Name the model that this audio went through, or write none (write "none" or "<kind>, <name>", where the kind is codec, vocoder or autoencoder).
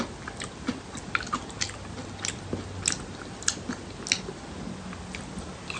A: none